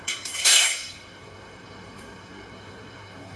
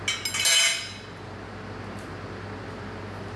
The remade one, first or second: first